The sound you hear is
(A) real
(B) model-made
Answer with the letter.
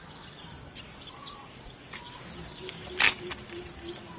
A